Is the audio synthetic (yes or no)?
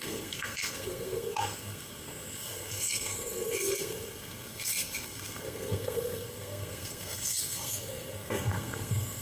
yes